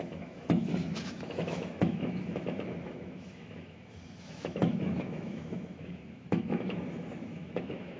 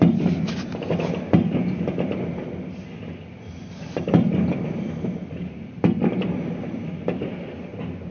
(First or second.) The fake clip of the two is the first